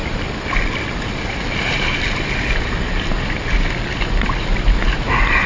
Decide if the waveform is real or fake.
real